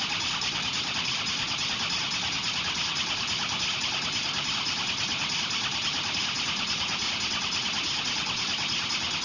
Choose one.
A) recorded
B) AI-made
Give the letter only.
A